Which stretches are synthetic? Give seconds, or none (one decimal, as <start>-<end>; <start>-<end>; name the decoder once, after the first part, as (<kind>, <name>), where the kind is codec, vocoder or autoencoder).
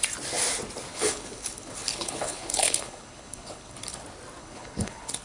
0.9-4.0 (codec, HILCodec); 4.4-5.2